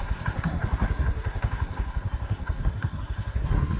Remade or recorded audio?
remade